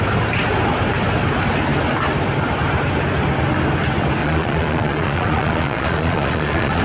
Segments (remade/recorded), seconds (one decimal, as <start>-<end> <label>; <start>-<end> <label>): 0.0-4.2 recorded; 4.2-6.8 remade

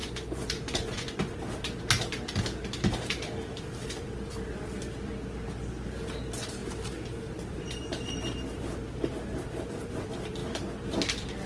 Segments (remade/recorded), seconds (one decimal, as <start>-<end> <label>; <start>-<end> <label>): 0.0-1.3 remade; 1.3-11.5 recorded

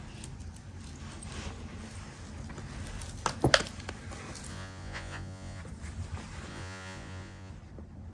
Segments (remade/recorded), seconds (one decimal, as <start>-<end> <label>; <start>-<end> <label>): 0.0-4.5 recorded; 4.5-5.6 remade; 5.6-6.5 recorded; 6.5-7.5 remade; 7.5-8.1 recorded

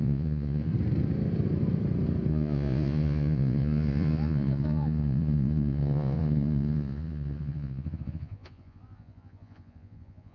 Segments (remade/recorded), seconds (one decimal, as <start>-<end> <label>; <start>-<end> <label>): 0.0-0.7 remade; 0.7-2.3 recorded; 2.3-10.3 remade